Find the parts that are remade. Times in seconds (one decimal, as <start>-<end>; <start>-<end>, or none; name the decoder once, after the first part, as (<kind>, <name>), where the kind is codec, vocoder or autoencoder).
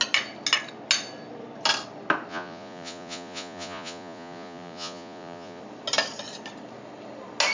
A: 2.3-5.6 (vocoder, Vocos)